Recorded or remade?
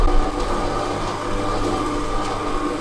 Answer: recorded